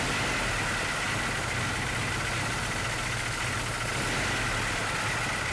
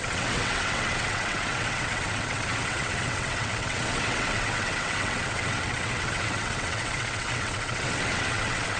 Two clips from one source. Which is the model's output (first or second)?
second